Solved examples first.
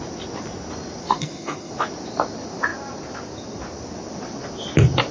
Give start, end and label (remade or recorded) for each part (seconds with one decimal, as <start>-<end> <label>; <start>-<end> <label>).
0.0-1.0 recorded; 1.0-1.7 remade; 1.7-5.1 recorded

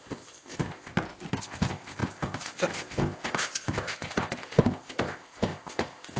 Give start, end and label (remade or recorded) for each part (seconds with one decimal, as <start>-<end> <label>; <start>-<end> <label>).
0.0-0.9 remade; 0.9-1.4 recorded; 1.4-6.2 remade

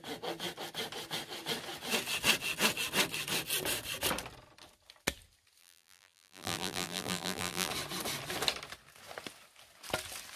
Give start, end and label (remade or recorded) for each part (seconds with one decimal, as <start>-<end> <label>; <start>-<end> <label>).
0.0-5.6 recorded; 5.6-7.7 remade; 7.7-10.4 recorded

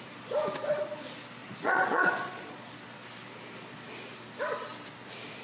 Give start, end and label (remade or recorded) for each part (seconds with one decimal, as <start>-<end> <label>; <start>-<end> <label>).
0.0-1.4 recorded; 1.4-2.7 remade; 2.7-5.4 recorded

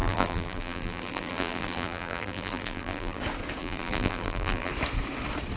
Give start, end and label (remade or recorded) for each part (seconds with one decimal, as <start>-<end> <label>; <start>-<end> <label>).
0.0-3.2 remade; 3.2-3.6 recorded; 3.6-4.7 remade; 4.7-5.6 recorded